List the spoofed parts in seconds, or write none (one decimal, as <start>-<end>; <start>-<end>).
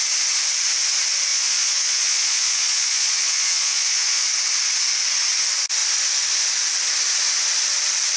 1.3-4.2